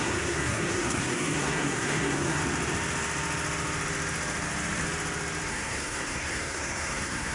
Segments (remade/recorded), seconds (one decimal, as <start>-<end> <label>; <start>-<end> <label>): 0.0-2.4 remade; 2.4-5.5 recorded; 5.5-7.3 remade